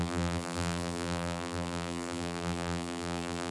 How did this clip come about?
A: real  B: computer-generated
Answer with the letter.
B